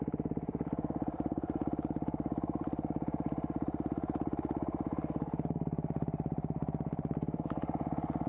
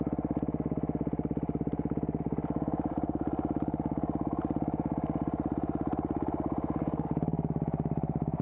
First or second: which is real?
second